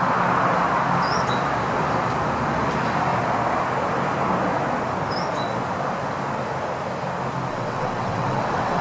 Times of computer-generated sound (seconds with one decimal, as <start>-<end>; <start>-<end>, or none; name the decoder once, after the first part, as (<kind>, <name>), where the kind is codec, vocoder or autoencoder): 7.5-8.8 (vocoder, WaveNeXt)

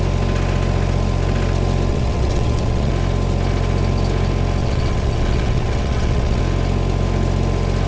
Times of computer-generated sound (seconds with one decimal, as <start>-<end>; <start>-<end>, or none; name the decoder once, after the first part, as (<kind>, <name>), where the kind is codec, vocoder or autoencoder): 1.9-2.9 (vocoder, WaveNeXt); 4.6-6.4

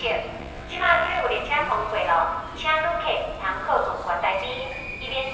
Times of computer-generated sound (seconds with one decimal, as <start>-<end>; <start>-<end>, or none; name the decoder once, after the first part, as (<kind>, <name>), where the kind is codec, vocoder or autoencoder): 0.4-1.2 (vocoder, WaveNeXt)

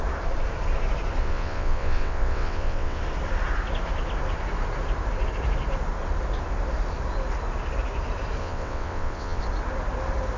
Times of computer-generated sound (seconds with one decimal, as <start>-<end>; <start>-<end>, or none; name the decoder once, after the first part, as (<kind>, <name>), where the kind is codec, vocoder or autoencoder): 1.2-3.0 (vocoder, WaveNeXt); 8.4-9.4

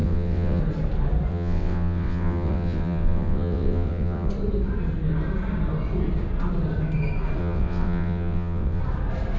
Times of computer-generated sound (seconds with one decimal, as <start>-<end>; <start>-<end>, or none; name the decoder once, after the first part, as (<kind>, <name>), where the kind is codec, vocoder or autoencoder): 0.0-0.6 (vocoder, WaveNeXt); 1.3-4.3; 7.4-8.8

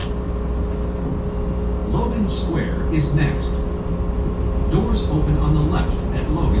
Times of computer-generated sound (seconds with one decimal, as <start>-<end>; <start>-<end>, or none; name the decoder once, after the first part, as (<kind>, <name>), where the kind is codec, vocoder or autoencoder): none